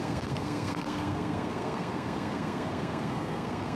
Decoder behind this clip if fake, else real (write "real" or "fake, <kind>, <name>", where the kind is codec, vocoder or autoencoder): fake, codec, SNAC